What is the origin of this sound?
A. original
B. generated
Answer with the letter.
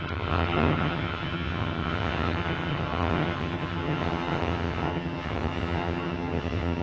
B